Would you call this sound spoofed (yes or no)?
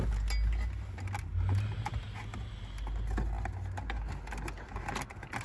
no